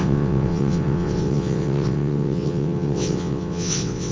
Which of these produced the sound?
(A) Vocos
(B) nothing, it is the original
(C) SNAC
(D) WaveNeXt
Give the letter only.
D